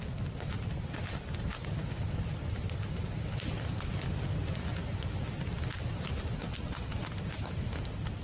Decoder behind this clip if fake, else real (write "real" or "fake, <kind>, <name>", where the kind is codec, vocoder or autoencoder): real